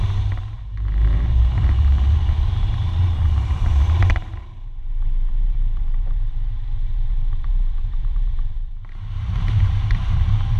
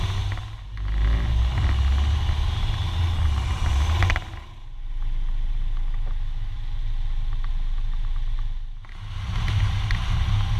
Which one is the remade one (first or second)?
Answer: first